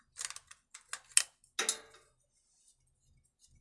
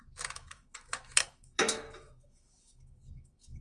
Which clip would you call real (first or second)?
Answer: first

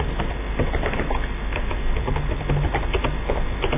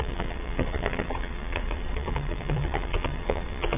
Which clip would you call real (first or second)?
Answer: first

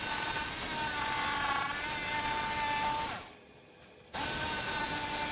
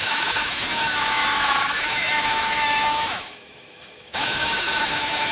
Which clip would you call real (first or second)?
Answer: first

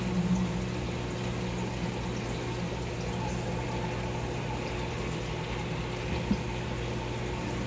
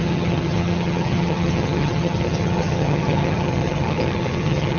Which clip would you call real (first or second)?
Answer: first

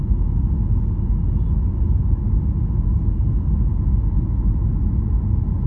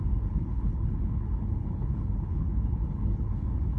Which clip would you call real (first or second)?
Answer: first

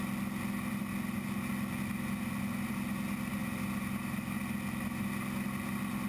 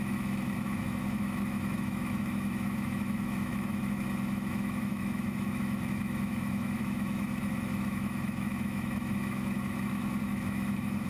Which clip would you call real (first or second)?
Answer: first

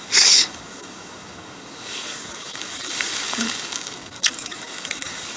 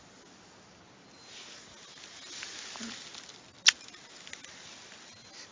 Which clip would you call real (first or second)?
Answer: second